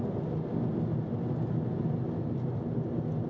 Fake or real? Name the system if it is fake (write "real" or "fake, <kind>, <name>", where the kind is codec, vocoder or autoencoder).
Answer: real